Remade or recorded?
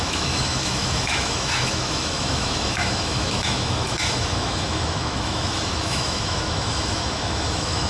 remade